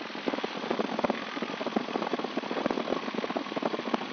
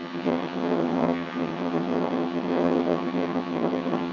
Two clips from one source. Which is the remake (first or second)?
second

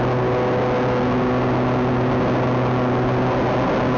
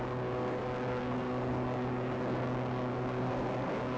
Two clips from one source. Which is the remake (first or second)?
second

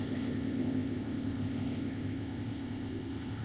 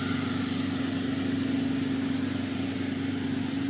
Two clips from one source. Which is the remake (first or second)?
first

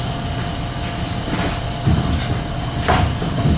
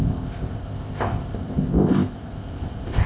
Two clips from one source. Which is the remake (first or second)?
second